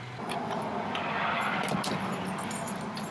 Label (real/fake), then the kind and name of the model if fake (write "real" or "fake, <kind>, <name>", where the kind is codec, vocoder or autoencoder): real